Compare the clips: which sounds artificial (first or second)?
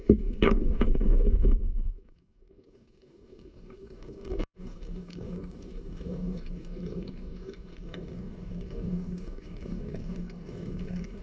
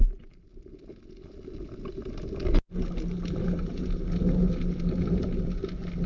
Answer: first